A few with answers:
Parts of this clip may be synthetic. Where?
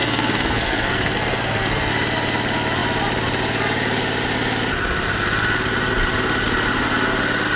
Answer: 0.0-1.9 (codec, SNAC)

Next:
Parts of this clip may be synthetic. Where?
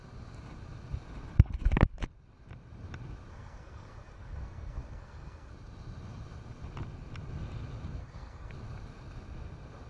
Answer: 3.3-5.5 (codec, SNAC); 8.0-8.5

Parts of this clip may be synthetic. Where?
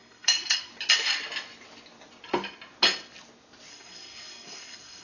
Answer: 0.0-0.7 (codec, SNAC); 3.7-5.0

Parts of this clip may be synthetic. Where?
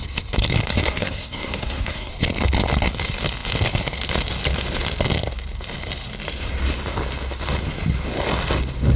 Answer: 0.7-2.1 (codec, SNAC)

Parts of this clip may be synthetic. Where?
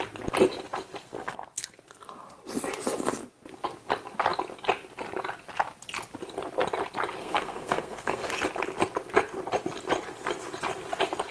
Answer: 1.0-1.8 (codec, SNAC); 7.2-8.3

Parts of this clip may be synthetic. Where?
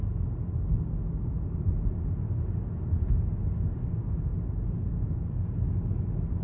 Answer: none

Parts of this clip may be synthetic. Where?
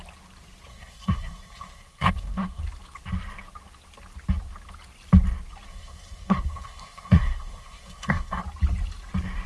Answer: 0.7-2.6 (codec, SNAC); 5.7-8.4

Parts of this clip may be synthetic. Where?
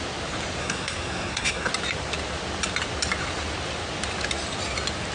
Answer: 0.6-1.7 (codec, SNAC)